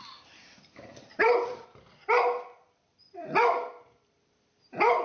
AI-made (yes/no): yes